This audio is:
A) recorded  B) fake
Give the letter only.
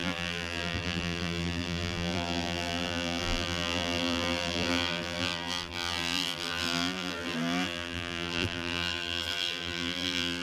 B